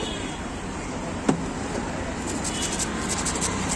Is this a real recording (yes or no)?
yes